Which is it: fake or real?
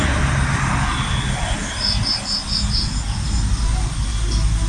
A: real